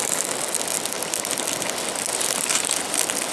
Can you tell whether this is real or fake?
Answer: real